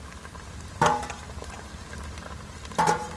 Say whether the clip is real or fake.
real